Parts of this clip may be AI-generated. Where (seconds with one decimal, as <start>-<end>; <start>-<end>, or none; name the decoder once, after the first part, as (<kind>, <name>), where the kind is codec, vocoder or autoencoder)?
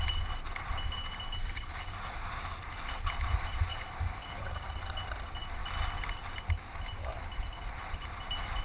1.4-2.4 (codec, DAC); 3.7-4.7